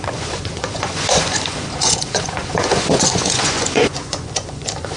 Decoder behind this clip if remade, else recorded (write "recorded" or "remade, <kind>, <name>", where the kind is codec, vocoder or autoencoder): remade, vocoder, Vocos